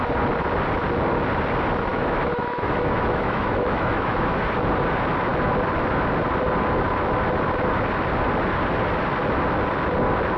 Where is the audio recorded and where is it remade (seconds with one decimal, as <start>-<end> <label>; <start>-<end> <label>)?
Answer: 0.0-1.9 recorded; 1.9-4.4 remade; 4.4-10.4 recorded